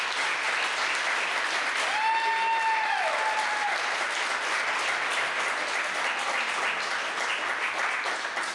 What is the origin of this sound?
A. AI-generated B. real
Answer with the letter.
B